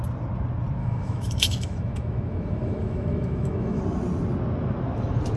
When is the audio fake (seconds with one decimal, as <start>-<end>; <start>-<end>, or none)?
0.8-3.8